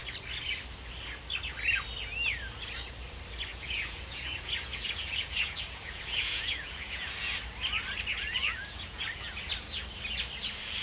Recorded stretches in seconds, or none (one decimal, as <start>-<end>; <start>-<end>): 0.0-3.5; 7.1-8.1; 9.5-10.8